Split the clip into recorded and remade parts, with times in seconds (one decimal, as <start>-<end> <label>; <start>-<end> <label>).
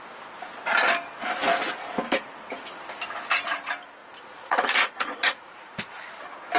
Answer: 0.0-4.0 recorded; 4.0-6.1 remade; 6.1-6.6 recorded